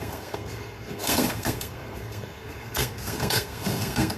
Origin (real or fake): fake